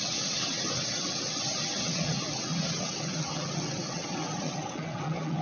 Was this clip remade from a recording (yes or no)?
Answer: yes